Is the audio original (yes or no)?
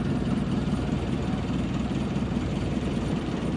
no